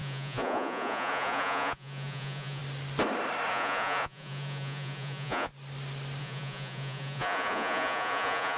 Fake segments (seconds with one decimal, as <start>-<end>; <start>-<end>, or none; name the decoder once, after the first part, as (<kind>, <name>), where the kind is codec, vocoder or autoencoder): 0.0-2.6 (vocoder, Vocos); 3.5-5.5; 6.2-8.6